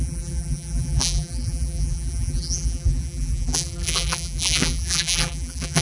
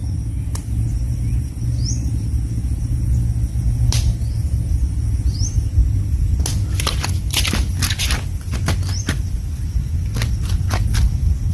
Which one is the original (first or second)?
second